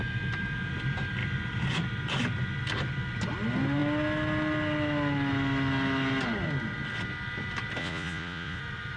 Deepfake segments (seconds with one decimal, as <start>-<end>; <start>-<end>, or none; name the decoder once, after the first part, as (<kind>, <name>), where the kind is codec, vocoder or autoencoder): 7.8-8.6 (vocoder, Vocos)